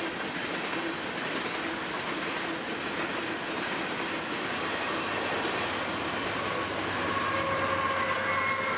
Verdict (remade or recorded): recorded